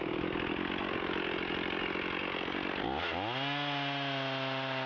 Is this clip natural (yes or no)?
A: yes